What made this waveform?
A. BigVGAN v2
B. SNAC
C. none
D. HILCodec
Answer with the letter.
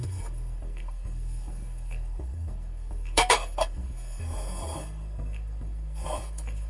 B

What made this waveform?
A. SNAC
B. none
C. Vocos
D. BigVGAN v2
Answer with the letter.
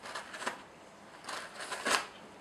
B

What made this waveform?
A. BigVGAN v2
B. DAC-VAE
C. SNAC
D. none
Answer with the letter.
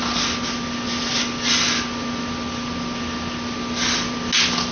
D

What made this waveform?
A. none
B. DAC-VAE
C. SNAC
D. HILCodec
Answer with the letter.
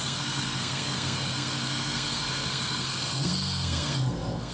C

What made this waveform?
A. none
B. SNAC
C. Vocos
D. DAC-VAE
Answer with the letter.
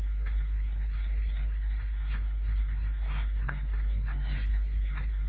B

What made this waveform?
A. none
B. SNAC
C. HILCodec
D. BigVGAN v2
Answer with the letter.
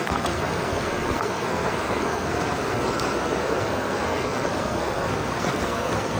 B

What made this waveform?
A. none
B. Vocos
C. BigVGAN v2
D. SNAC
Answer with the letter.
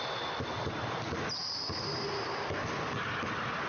A